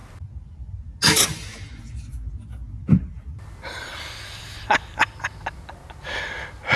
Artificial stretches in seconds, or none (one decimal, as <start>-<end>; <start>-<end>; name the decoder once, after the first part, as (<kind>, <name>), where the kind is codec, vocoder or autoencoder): none